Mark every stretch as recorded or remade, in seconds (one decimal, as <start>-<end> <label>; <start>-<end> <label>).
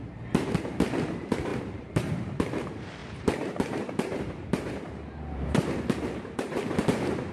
0.0-7.3 remade